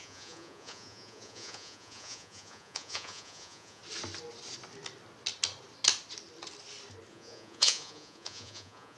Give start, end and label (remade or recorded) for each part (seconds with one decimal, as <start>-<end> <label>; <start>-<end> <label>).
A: 0.0-3.8 remade; 3.8-7.1 recorded; 7.1-9.0 remade